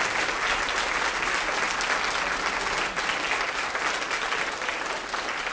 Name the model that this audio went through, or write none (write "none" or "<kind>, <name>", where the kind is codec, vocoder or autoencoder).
none